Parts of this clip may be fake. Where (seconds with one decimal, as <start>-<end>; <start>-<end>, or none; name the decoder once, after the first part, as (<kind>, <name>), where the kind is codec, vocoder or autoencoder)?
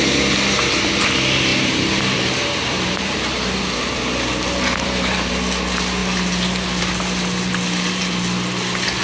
1.5-5.3 (vocoder, BigVGAN v2)